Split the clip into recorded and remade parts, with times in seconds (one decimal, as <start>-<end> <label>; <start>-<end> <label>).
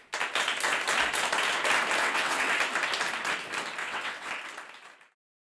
0.0-2.0 recorded; 2.0-2.5 remade; 2.5-3.8 recorded; 3.8-4.3 remade; 4.3-5.5 recorded